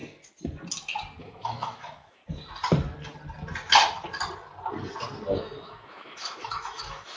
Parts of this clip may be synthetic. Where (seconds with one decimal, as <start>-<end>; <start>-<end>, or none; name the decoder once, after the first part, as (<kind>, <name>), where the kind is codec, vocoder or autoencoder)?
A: 1.2-2.2 (autoencoder, DAC-VAE); 5.3-7.2